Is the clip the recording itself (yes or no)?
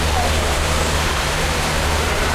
no